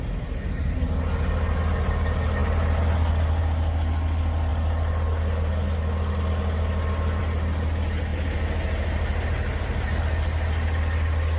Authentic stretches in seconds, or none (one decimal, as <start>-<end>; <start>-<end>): 0.0-11.4